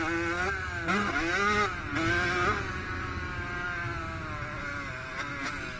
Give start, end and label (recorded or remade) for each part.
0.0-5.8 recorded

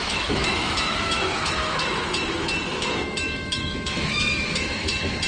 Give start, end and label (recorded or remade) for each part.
0.0-5.3 remade

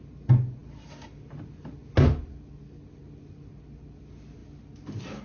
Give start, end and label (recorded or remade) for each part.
0.0-5.2 recorded

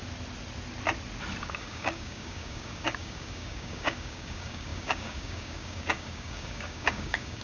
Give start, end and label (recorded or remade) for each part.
0.0-1.4 recorded; 1.4-7.4 remade